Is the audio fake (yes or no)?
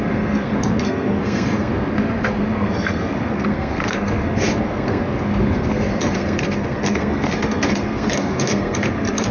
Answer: yes